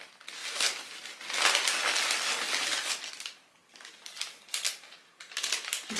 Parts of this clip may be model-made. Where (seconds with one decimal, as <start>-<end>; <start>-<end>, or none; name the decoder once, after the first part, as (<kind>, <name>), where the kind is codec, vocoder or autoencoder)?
none